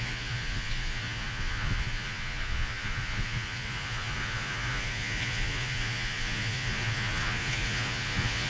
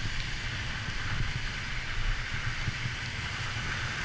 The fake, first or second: first